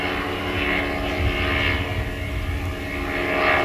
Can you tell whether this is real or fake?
real